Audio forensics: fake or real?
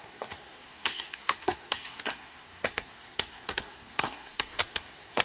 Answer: fake